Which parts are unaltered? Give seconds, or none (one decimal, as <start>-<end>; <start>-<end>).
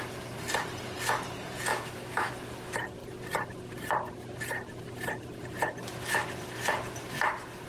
0.0-1.7; 2.3-7.7